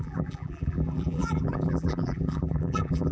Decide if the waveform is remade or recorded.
remade